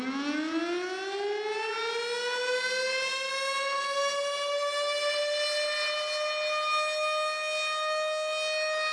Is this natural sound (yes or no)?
yes